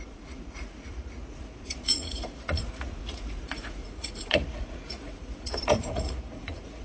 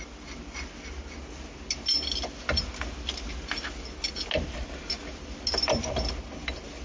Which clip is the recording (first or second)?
second